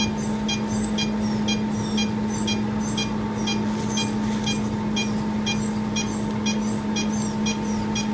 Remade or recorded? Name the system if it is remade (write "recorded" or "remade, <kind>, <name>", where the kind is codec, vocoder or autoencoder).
recorded